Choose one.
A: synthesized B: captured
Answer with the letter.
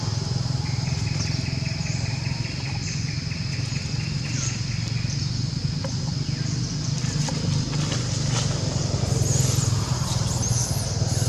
B